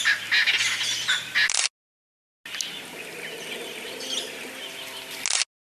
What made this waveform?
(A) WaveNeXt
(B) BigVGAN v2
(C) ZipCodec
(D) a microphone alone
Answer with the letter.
D